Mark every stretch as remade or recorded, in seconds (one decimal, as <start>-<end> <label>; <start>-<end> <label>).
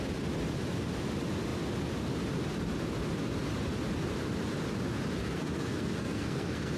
0.0-5.2 recorded; 5.2-6.8 remade